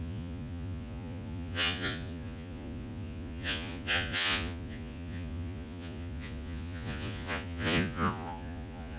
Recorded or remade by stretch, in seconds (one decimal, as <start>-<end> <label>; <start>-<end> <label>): 0.0-9.0 remade